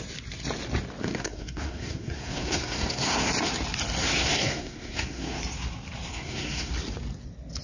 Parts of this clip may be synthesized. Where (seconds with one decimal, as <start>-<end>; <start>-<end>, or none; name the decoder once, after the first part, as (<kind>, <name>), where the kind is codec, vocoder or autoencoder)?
1.0-3.3 (codec, SNAC); 4.0-5.4; 6.1-6.7